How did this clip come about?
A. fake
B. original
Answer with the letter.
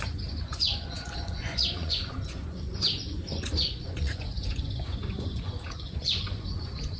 A